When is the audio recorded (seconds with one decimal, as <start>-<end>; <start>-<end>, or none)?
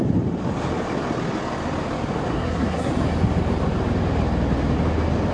0.0-2.3; 2.9-5.3